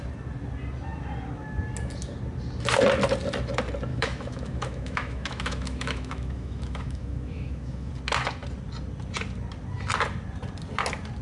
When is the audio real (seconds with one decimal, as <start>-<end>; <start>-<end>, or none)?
0.0-3.9; 7.9-11.2